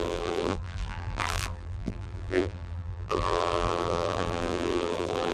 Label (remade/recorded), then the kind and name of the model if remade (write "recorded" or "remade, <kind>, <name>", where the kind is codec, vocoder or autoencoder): remade, vocoder, BigVGAN v2